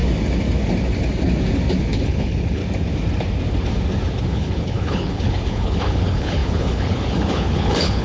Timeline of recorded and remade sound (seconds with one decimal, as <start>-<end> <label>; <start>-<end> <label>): 0.0-1.8 recorded; 1.8-2.6 remade; 2.6-4.2 recorded; 4.2-8.0 remade